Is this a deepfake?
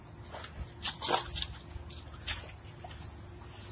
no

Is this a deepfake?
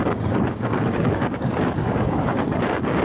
yes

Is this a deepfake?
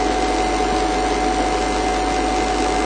no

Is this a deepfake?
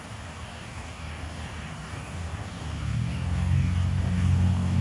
yes